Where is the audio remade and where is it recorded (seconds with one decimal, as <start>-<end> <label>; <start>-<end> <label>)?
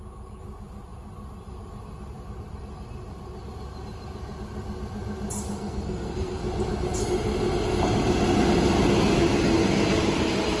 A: 0.0-5.5 recorded; 5.5-6.4 remade; 6.4-10.6 recorded